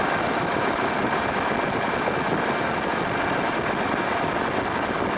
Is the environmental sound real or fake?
real